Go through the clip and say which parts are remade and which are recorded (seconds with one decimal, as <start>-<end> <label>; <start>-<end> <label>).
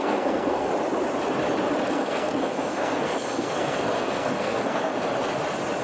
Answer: 0.0-0.7 remade; 0.7-1.9 recorded; 1.9-4.9 remade; 4.9-5.8 recorded